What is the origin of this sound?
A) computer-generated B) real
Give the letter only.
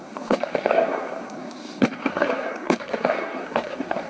A